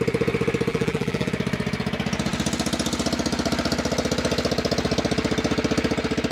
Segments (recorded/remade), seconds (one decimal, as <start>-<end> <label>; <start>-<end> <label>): 0.0-0.7 recorded; 0.7-1.3 remade; 1.3-6.3 recorded